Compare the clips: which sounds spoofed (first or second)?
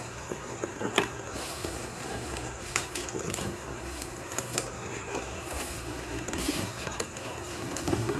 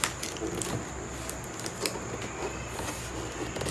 first